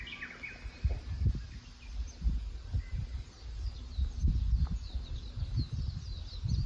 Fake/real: real